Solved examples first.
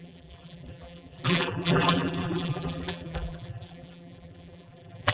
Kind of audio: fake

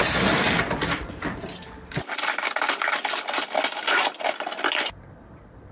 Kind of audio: fake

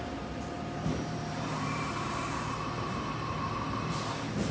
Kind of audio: fake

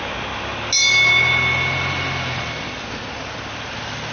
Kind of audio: real